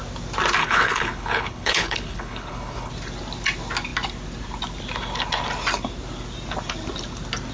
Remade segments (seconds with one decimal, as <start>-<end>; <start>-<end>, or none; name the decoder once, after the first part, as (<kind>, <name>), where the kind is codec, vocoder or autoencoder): 0.6-2.9 (codec, HILCodec)